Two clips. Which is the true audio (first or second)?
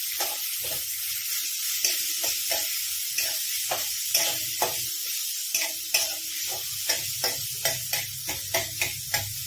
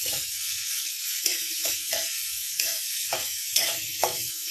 first